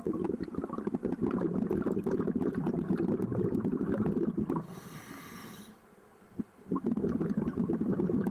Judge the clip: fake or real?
fake